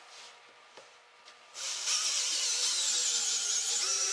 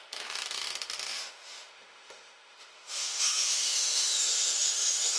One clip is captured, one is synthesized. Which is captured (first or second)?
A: first